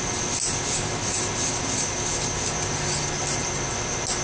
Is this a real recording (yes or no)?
yes